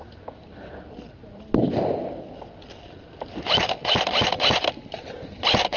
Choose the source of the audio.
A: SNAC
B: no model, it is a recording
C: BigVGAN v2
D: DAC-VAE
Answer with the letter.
B